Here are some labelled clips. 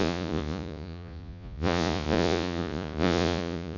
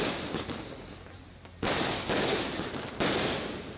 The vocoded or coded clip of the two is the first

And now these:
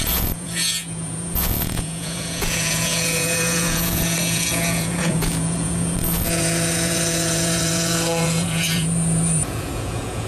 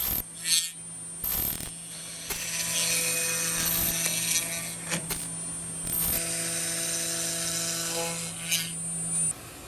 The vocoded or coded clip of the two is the first